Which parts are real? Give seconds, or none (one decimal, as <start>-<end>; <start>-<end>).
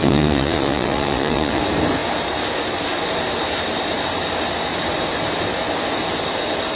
1.6-6.8